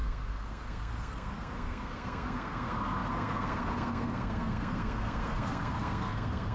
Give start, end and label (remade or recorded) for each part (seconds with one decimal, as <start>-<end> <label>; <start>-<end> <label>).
0.0-6.5 remade